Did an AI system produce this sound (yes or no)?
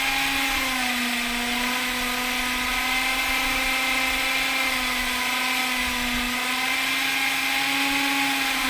no